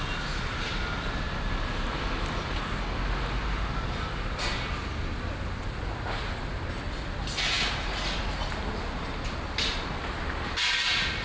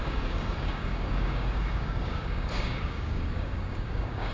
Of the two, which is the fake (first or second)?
second